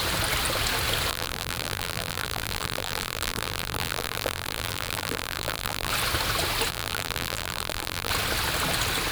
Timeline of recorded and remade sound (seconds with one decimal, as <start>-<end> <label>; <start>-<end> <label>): 0.0-1.1 recorded; 1.1-5.9 remade; 5.9-6.7 recorded; 6.7-8.1 remade; 8.1-9.1 recorded